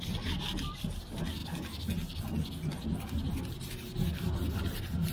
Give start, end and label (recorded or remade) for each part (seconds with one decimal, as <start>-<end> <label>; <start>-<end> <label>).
0.0-5.1 recorded